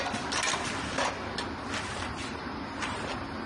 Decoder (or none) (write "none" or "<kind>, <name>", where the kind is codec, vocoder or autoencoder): none